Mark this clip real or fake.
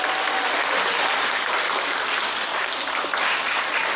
real